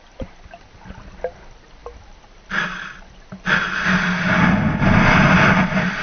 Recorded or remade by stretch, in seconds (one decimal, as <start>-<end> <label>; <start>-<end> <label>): 0.0-6.0 recorded